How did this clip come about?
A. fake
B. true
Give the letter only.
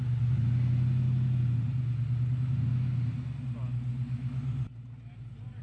B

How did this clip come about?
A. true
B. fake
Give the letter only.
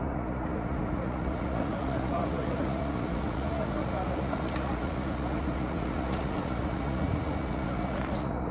B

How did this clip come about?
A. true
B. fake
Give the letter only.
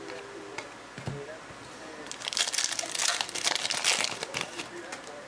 A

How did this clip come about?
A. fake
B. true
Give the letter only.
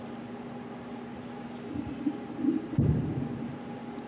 A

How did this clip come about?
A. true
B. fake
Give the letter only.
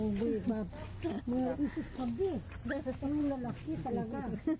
A